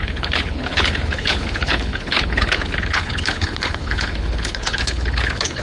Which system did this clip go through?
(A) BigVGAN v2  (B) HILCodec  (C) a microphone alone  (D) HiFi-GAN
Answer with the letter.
B